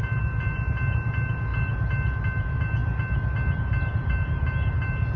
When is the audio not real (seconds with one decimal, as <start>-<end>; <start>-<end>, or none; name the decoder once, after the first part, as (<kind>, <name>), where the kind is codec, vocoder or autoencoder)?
none